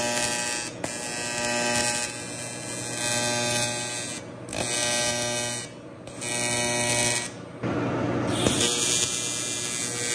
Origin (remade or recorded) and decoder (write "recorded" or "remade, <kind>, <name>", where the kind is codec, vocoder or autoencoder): recorded